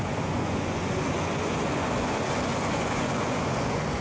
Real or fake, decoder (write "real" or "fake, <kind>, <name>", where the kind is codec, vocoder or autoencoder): fake, vocoder, Vocos